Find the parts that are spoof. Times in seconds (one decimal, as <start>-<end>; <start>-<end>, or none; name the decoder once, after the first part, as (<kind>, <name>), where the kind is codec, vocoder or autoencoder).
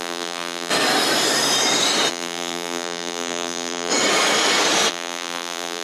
0.0-0.7 (vocoder, BigVGAN v2); 2.1-3.9; 4.9-5.8